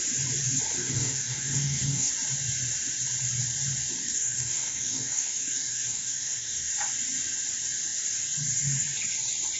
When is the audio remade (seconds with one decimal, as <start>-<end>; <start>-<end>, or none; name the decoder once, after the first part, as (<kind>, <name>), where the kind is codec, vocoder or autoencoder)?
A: 0.8-2.1 (codec, DAC); 4.0-6.7